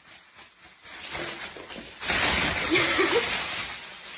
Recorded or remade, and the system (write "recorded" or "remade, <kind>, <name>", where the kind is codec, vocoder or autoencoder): recorded